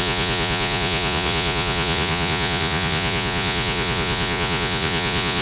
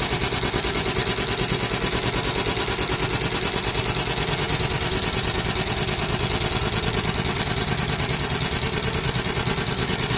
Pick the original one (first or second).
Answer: second